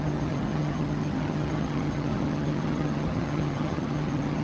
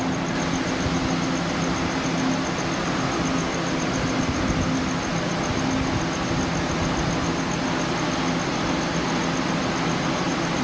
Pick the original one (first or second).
second